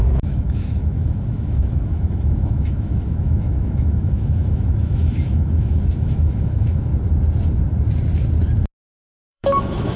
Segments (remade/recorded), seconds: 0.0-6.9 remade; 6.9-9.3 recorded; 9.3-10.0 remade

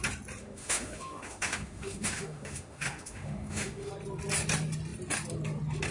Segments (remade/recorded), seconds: 0.0-0.4 recorded; 0.4-3.9 remade; 3.9-5.9 recorded

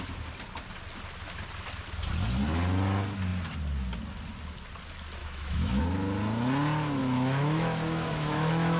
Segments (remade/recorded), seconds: 0.0-5.2 recorded; 5.2-5.8 remade; 5.8-7.0 recorded; 7.0-8.8 remade